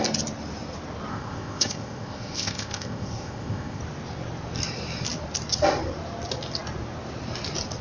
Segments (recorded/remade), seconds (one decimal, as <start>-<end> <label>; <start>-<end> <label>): 0.0-1.1 recorded; 1.1-3.8 remade; 3.8-7.8 recorded